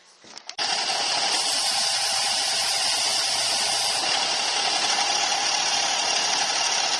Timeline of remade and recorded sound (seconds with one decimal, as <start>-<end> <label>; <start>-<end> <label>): 0.0-2.1 recorded; 2.1-2.8 remade; 2.8-7.0 recorded

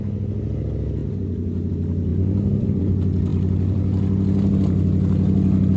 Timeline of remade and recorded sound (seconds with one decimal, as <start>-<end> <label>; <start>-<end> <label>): 0.0-2.1 recorded; 2.1-2.8 remade; 2.8-3.3 recorded; 3.3-5.8 remade

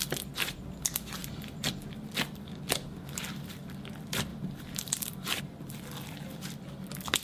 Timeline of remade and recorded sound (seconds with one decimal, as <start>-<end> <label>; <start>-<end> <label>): 0.0-4.3 recorded; 4.3-5.4 remade; 5.4-7.2 recorded

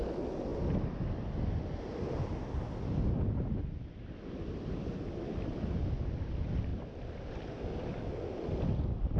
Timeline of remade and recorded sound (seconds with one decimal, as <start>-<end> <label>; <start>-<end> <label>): 0.0-6.7 recorded; 6.7-7.3 remade; 7.3-9.2 recorded

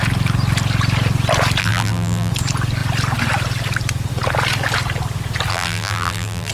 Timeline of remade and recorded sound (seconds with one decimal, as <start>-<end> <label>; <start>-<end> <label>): 0.0-1.6 recorded; 1.6-2.3 remade; 2.3-5.5 recorded; 5.5-6.5 remade

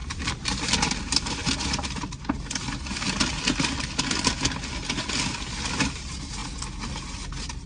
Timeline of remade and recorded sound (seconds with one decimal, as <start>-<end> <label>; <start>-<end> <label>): 0.0-1.0 remade; 1.0-7.7 recorded

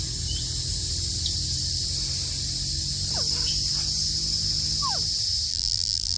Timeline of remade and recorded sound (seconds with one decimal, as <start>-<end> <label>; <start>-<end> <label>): 0.0-5.5 recorded; 5.5-6.2 remade

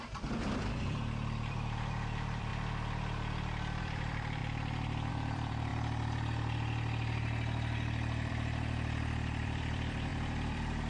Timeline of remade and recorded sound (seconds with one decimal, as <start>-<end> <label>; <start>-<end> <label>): 0.0-2.5 remade; 2.5-3.8 recorded; 3.8-4.4 remade; 4.4-5.1 recorded; 5.1-5.7 remade; 5.7-8.3 recorded; 8.3-10.9 remade